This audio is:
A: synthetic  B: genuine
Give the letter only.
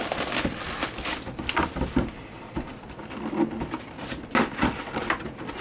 B